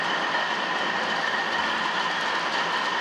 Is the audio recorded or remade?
recorded